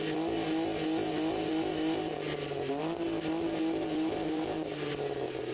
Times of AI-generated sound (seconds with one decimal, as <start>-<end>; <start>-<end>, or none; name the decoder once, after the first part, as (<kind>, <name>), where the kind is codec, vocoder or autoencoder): 3.8-4.9 (vocoder, BigVGAN v2)